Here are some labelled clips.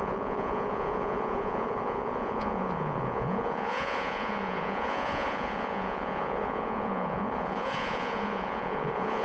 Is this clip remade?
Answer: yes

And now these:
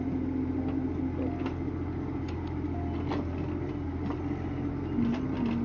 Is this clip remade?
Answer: no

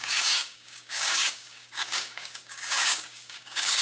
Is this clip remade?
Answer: yes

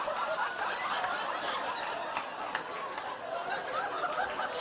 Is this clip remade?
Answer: no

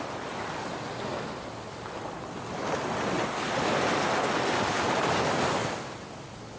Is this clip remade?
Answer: no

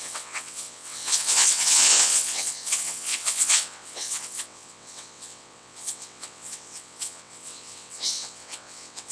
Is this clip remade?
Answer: yes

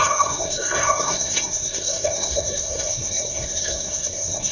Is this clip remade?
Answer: yes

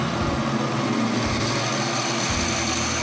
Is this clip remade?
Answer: no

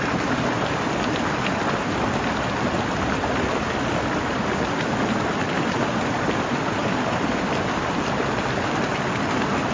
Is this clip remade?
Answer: no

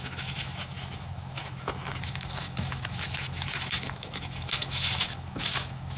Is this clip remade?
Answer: yes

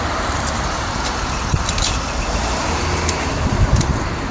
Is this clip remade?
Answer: yes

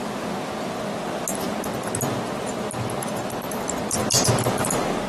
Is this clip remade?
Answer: no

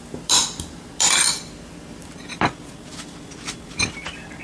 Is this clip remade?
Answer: no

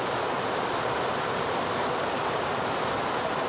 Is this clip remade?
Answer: no